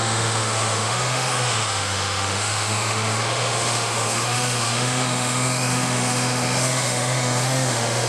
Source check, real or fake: fake